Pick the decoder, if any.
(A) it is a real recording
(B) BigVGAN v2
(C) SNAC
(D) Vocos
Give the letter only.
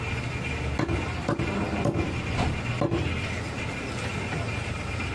A